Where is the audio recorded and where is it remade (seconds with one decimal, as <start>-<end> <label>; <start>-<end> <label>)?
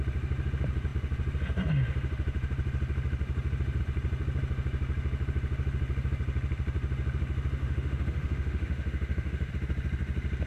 0.0-7.6 recorded; 7.6-9.5 remade; 9.5-10.5 recorded